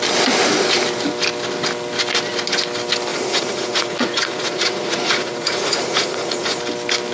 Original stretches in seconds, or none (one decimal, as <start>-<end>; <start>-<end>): 0.0-3.1; 6.6-7.1